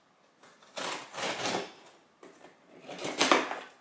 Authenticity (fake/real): real